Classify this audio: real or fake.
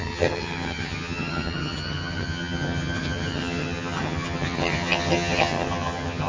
fake